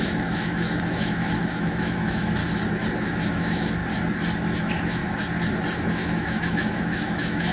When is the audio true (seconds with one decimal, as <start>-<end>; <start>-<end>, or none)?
2.4-3.0; 3.8-4.6; 5.0-5.9